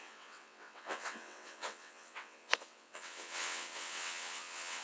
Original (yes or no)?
no